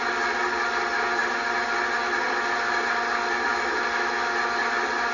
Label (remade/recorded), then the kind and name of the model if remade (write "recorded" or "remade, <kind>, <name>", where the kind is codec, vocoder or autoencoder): recorded